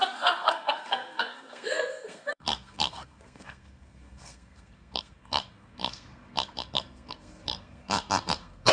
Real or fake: fake